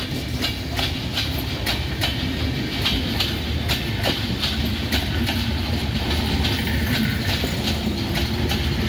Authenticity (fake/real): real